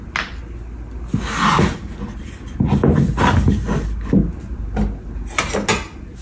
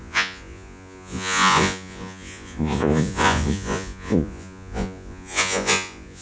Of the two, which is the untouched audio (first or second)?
first